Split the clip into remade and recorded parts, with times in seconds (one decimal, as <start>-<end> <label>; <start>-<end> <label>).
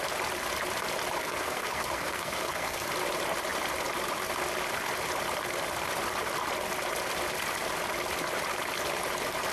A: 0.0-1.2 recorded; 1.2-2.9 remade; 2.9-9.5 recorded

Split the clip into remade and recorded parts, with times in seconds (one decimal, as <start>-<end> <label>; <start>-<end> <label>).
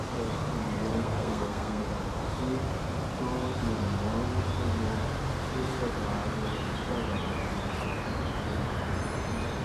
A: 0.0-0.9 recorded; 0.9-1.8 remade; 1.8-9.6 recorded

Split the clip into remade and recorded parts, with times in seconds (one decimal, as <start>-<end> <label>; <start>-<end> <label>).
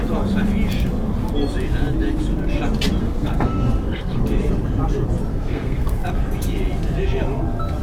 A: 0.0-3.0 recorded; 3.0-4.2 remade; 4.2-5.3 recorded; 5.3-6.0 remade; 6.0-7.8 recorded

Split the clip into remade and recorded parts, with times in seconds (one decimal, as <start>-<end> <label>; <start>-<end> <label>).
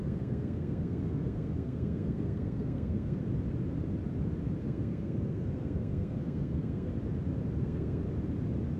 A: 0.0-3.2 remade; 3.2-4.6 recorded; 4.6-6.9 remade; 6.9-7.6 recorded; 7.6-8.0 remade; 8.0-8.8 recorded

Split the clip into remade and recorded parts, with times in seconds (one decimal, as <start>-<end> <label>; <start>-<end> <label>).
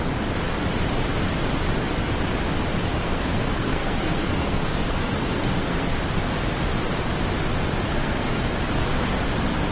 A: 0.0-2.8 recorded; 2.8-6.0 remade; 6.0-7.9 recorded; 7.9-8.4 remade; 8.4-9.7 recorded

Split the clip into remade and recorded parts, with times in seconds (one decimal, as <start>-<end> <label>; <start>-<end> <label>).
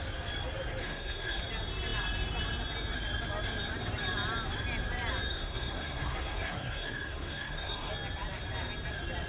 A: 0.0-0.8 recorded; 0.8-1.4 remade; 1.4-5.3 recorded; 5.3-7.9 remade; 7.9-9.3 recorded